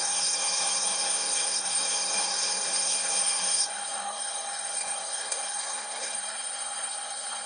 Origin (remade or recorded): remade